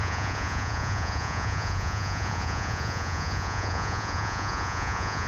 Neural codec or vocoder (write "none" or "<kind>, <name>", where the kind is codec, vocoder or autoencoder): vocoder, Vocos